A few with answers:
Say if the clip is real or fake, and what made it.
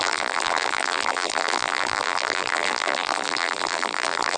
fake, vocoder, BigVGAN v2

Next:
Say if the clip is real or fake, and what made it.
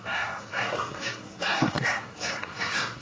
fake, codec, SNAC